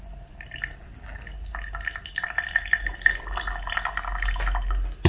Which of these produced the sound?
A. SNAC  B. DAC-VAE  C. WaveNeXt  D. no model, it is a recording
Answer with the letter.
D